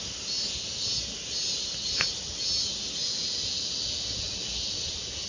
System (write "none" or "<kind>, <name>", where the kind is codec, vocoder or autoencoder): none